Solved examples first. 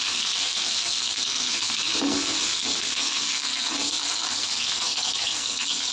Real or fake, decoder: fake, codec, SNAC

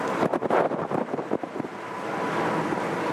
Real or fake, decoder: real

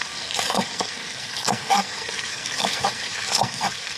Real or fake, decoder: fake, codec, SNAC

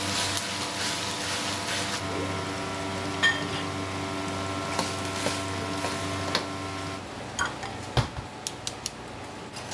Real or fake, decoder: real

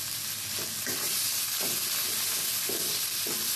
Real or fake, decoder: real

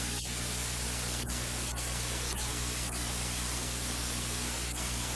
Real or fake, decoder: fake, codec, SNAC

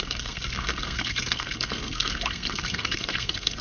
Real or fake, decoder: fake, codec, SNAC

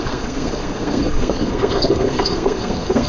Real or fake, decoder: fake, codec, SNAC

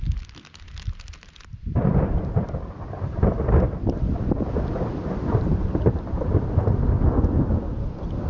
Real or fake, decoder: real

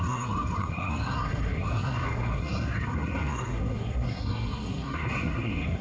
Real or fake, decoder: fake, codec, SNAC